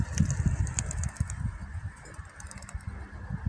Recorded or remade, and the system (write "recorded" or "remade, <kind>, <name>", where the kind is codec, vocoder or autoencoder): recorded